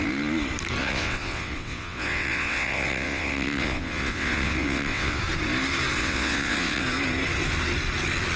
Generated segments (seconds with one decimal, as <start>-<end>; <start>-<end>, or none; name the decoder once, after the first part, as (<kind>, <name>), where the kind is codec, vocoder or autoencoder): 0.8-5.2 (vocoder, WaveNeXt); 6.0-6.8